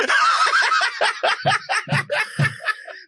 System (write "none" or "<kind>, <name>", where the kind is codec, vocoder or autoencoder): none